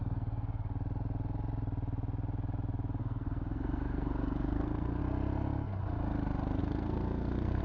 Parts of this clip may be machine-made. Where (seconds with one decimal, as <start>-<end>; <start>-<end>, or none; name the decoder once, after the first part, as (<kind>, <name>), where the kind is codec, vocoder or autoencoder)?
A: 0.0-0.7 (codec, SNAC); 3.0-5.0; 6.6-7.6